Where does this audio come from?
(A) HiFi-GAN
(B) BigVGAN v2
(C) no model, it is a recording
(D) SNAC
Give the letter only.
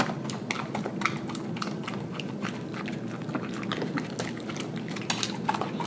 C